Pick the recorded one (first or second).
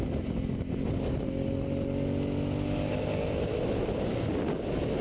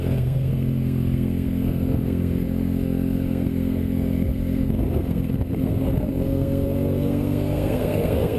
first